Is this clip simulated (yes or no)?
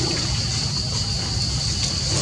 no